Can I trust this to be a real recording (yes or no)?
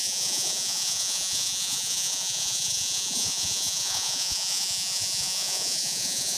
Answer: no